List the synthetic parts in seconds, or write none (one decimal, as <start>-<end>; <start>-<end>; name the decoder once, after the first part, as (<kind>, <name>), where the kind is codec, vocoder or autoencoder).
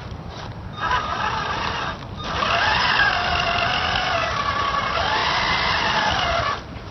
none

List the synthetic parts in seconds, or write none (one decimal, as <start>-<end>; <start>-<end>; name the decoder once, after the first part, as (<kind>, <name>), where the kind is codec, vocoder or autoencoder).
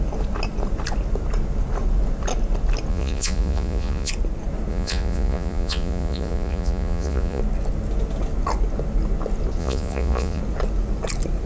2.9-4.1 (vocoder, Vocos); 4.7-7.4; 9.6-10.4